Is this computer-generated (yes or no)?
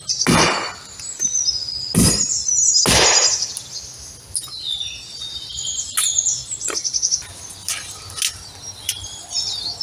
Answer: no